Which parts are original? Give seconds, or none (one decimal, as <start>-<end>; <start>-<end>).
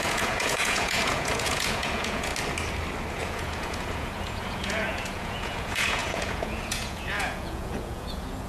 2.3-3.1